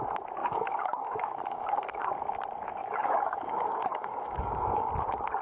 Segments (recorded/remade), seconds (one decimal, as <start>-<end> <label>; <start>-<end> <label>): 0.0-0.4 recorded; 0.4-2.1 remade; 2.1-2.8 recorded; 2.8-4.9 remade; 4.9-5.4 recorded